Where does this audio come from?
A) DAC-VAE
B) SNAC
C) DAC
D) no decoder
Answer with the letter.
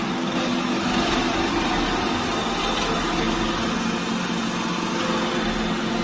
D